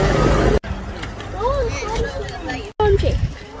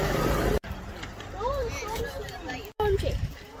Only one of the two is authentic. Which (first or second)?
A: first